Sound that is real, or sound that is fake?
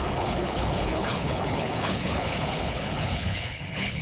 fake